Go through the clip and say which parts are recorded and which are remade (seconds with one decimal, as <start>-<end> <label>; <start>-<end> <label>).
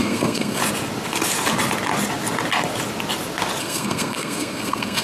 0.0-0.6 remade; 0.6-3.6 recorded; 3.6-5.0 remade